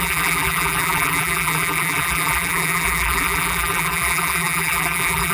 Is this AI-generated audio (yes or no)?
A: yes